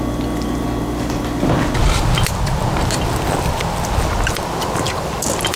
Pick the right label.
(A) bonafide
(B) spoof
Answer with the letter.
A